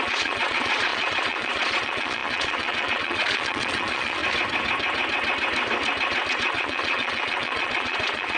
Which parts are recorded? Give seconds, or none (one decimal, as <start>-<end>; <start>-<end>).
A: 4.2-6.3